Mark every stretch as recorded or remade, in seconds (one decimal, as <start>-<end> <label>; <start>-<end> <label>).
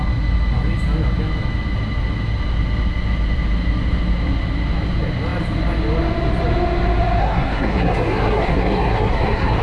0.0-7.2 recorded; 7.2-9.6 remade